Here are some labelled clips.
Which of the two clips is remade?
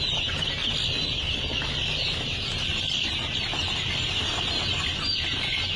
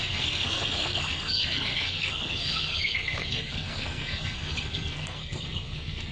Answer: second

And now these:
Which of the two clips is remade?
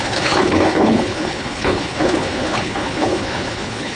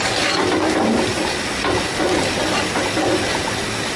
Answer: first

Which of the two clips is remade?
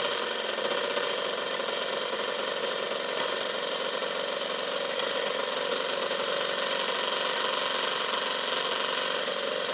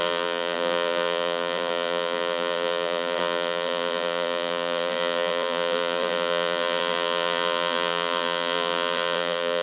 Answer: second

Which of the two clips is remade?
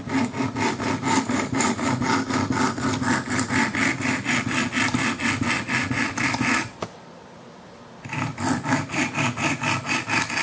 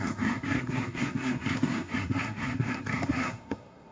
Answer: second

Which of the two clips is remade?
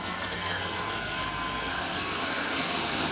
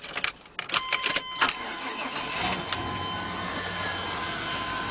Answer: first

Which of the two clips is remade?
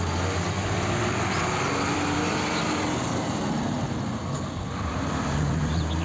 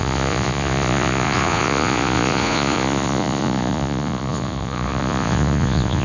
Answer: second